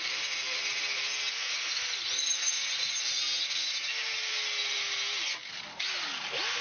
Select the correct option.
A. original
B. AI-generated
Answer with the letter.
A